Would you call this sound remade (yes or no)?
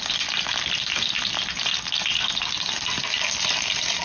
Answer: no